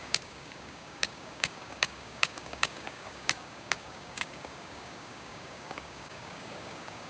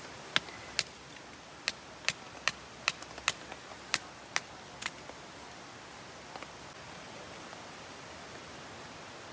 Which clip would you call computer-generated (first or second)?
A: first